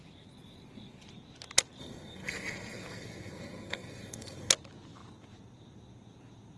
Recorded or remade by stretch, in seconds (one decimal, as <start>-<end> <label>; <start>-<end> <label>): 0.0-1.8 recorded; 1.8-4.5 remade; 4.5-6.6 recorded